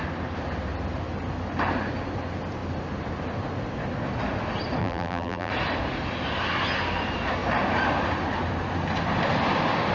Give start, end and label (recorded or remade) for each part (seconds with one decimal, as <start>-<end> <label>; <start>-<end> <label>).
0.0-4.8 recorded; 4.8-5.5 remade; 5.5-9.9 recorded